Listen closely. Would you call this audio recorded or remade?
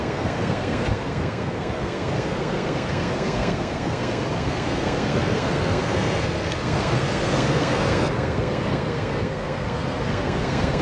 remade